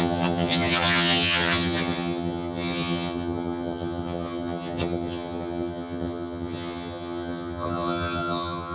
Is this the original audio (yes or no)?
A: no